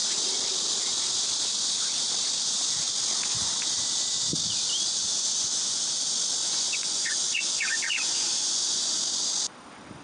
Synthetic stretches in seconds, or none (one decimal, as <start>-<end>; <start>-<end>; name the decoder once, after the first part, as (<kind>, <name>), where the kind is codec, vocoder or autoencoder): 5.1-5.8 (vocoder, Vocos); 6.4-9.0